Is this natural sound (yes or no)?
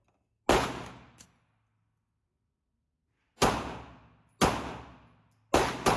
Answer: yes